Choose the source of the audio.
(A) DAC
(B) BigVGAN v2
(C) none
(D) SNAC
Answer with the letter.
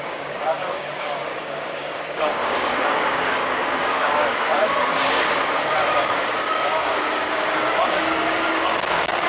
A